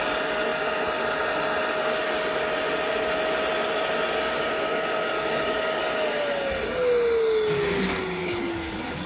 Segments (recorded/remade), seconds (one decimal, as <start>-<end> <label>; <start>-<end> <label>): 0.0-4.7 recorded; 4.7-5.8 remade; 5.8-8.2 recorded; 8.2-9.1 remade

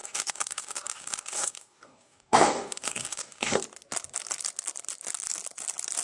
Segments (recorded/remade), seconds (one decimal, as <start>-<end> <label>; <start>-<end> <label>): 0.0-3.6 remade; 3.6-6.0 recorded

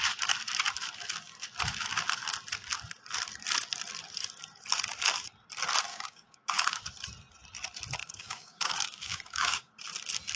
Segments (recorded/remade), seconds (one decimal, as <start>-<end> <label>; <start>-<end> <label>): 0.0-5.9 recorded; 5.9-6.8 remade; 6.8-8.0 recorded; 8.0-9.7 remade; 9.7-10.4 recorded

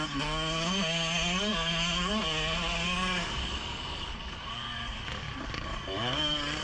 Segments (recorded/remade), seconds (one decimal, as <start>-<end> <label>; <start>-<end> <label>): 0.0-6.6 remade